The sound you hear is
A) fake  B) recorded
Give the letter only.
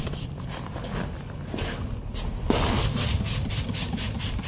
B